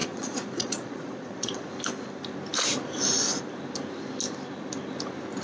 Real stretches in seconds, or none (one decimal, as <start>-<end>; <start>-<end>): 1.7-5.4